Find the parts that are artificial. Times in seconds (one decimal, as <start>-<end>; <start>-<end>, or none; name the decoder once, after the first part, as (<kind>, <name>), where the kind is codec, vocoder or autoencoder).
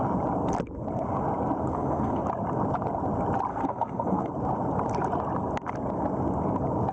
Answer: 1.7-2.2 (codec, SNAC); 3.5-4.3